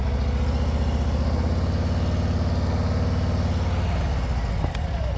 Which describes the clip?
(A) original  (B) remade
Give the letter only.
A